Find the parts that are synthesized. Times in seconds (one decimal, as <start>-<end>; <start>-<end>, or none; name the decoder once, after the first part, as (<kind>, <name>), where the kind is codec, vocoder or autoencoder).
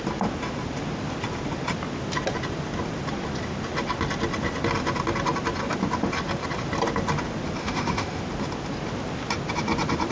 7.6-8.2 (autoencoder, DAC-VAE)